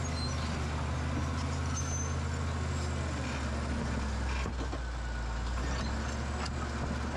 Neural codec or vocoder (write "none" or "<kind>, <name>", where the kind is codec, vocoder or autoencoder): none